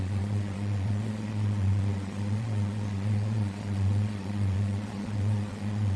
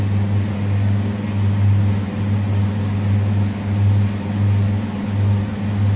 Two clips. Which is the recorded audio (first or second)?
second